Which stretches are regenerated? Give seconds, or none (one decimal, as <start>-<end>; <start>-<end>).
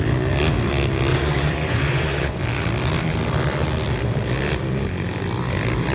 1.1-2.4